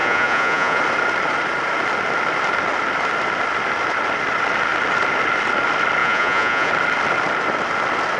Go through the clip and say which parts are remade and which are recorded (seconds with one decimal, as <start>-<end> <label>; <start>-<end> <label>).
0.0-0.8 remade; 0.8-6.0 recorded; 6.0-6.7 remade; 6.7-8.2 recorded